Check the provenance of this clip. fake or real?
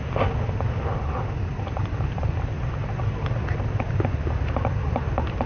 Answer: real